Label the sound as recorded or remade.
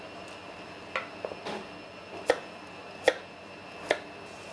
recorded